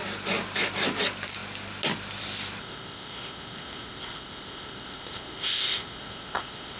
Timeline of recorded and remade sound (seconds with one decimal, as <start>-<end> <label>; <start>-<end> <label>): 0.0-2.6 recorded; 2.6-6.8 remade